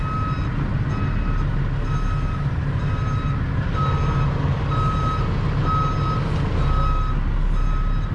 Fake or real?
real